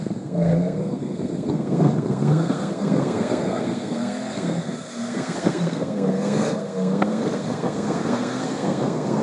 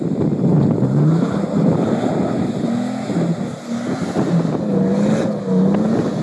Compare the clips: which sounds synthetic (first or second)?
first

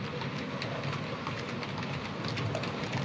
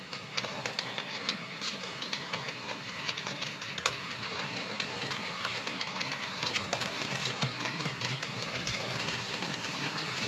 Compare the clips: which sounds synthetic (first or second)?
second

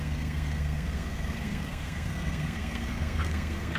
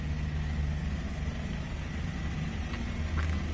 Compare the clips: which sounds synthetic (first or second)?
first